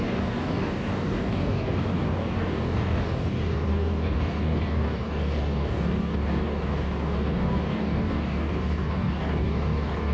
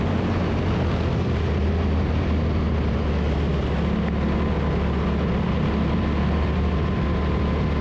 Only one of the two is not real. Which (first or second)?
first